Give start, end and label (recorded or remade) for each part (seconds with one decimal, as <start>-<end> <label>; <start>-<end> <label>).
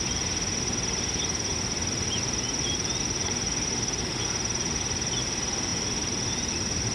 0.0-6.9 recorded